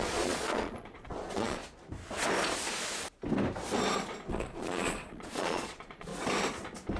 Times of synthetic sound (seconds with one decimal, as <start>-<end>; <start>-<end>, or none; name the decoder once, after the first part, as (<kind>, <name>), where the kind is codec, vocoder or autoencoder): 0.0-1.6 (vocoder, Vocos); 4.3-6.1